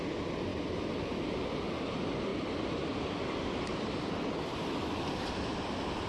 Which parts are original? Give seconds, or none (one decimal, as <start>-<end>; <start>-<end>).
0.0-6.1